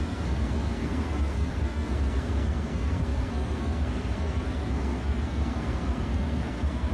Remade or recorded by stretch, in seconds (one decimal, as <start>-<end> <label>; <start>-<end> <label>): 0.0-6.9 remade